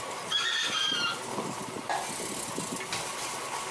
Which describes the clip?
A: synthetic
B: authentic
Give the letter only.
B